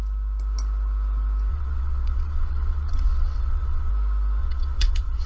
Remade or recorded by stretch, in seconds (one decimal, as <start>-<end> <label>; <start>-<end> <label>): 0.0-1.5 recorded; 1.5-3.9 remade; 3.9-4.4 recorded; 4.4-5.3 remade